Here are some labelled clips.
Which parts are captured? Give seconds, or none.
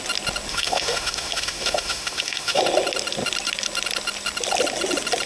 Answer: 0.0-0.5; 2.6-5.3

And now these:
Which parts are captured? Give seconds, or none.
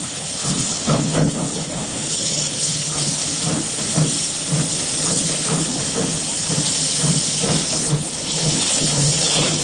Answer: 3.2-5.1; 5.8-7.7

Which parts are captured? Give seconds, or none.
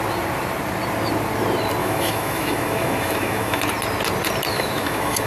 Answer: 0.0-1.8; 3.6-4.5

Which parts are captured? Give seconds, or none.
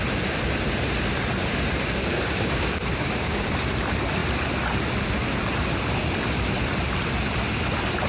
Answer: 0.0-2.0; 3.5-8.1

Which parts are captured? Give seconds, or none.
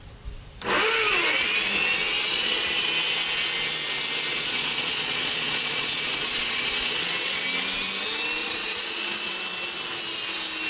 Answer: 0.0-2.2; 2.9-4.3; 7.4-8.4; 9.3-10.7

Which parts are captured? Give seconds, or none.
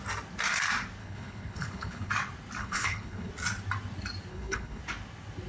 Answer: 0.0-1.0; 2.1-2.6; 3.3-4.3; 4.8-5.5